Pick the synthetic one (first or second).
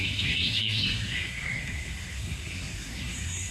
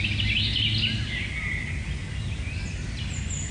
first